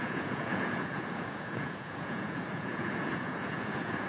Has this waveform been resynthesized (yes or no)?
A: yes